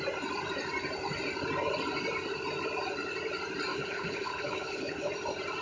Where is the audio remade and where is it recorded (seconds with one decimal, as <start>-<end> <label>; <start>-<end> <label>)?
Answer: 0.0-3.7 recorded; 3.7-5.1 remade; 5.1-5.6 recorded